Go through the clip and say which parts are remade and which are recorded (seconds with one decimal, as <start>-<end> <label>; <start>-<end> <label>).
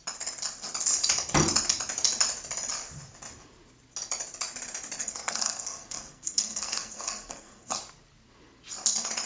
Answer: 0.0-5.0 recorded; 5.0-7.8 remade; 7.8-9.3 recorded